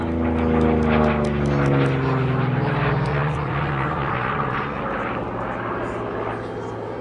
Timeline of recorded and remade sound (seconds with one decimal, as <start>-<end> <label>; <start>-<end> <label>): 0.0-3.1 recorded; 3.1-4.8 remade; 4.8-7.0 recorded